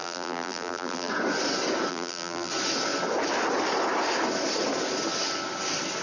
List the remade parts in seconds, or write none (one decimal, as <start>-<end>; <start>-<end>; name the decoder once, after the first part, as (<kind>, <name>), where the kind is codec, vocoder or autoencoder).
0.0-1.1 (vocoder, BigVGAN v2); 1.9-2.5